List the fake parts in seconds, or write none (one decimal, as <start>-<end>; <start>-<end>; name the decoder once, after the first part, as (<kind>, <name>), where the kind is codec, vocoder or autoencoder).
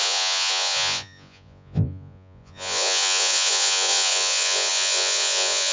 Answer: 0.0-5.7 (vocoder, Vocos)